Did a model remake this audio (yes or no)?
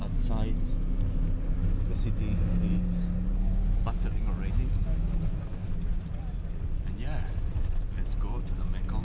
no